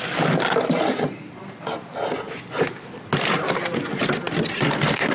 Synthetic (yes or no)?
no